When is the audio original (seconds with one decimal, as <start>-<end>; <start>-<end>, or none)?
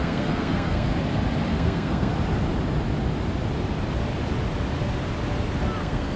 0.9-1.5; 2.1-5.8